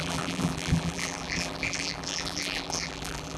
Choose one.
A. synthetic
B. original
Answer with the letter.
A